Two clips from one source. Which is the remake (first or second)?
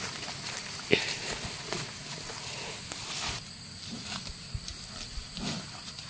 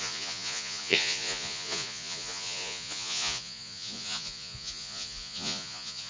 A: second